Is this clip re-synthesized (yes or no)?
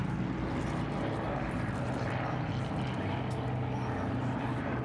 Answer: no